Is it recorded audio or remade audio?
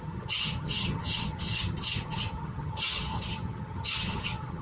remade